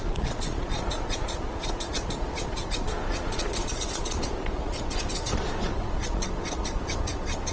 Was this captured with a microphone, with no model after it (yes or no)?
no